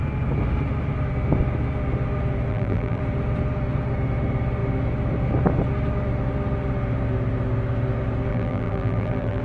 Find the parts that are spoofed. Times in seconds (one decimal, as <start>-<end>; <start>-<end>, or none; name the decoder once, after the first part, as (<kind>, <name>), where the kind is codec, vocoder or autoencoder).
2.5-3.0 (vocoder, BigVGAN v2); 8.3-9.4